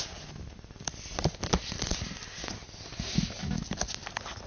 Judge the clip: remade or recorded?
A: recorded